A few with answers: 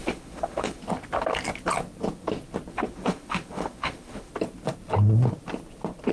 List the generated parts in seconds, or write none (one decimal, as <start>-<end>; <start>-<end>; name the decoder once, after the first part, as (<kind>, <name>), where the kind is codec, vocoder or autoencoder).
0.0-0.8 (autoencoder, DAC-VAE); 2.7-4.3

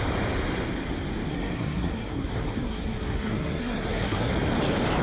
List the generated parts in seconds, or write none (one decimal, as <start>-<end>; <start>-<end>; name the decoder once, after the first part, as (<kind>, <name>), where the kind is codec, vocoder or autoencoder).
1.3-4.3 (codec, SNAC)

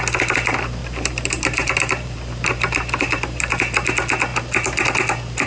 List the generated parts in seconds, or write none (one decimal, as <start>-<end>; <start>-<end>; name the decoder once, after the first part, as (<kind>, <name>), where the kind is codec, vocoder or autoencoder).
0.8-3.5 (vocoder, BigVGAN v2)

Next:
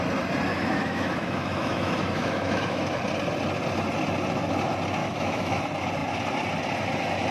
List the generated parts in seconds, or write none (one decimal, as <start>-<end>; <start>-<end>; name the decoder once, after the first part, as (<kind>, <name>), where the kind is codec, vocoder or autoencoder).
0.5-3.0 (autoencoder, DAC-VAE); 5.0-5.6